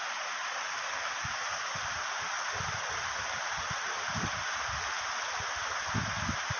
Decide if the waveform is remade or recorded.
recorded